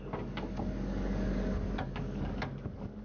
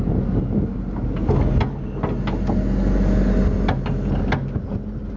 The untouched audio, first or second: second